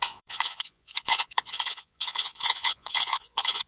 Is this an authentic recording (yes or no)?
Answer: no